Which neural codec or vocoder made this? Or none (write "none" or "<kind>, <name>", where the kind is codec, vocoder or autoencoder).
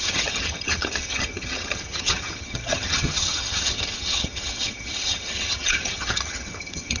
vocoder, HiFi-GAN